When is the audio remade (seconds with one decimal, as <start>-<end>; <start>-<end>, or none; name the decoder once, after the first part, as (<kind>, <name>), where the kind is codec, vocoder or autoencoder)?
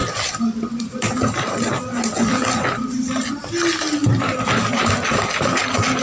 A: 0.0-1.8 (vocoder, BigVGAN v2); 3.4-4.8